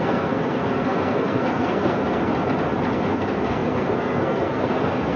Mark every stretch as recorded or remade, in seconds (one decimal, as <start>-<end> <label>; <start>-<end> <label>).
0.0-2.3 remade; 2.3-2.9 recorded; 2.9-5.2 remade